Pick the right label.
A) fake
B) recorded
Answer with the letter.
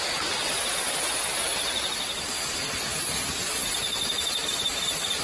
B